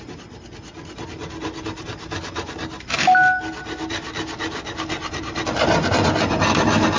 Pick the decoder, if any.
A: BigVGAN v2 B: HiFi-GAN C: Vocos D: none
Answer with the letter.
D